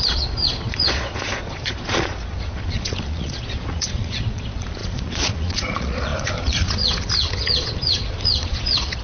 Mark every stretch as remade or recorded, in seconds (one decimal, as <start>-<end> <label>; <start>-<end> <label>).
0.0-9.0 remade